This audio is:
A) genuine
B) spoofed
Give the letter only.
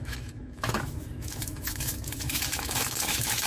B